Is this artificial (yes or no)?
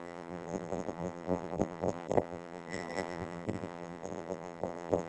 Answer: yes